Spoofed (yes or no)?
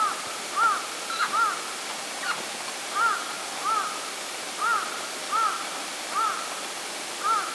no